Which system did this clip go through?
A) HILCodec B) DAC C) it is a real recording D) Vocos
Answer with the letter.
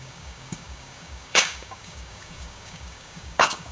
B